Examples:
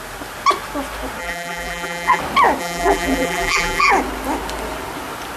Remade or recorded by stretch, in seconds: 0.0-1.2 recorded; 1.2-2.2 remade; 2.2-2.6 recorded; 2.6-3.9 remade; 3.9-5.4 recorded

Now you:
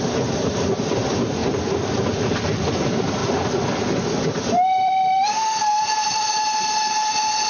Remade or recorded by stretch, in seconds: 0.0-3.2 remade; 3.2-4.2 recorded; 4.2-7.5 remade

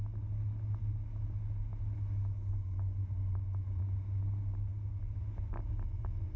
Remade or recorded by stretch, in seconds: 0.0-6.4 recorded

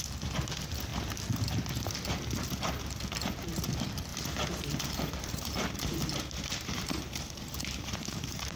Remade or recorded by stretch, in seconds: 0.0-4.1 recorded; 4.1-8.6 remade

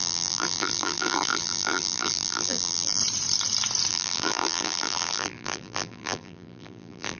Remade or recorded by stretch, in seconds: 0.0-3.0 remade; 3.0-3.9 recorded; 3.9-7.2 remade

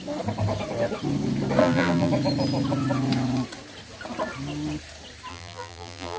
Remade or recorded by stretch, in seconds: 0.0-1.6 recorded; 1.6-2.1 remade; 2.1-5.3 recorded; 5.3-6.2 remade

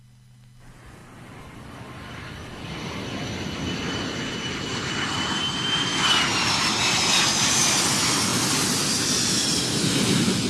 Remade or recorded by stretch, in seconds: 0.0-4.7 recorded; 4.7-5.4 remade; 5.4-10.5 recorded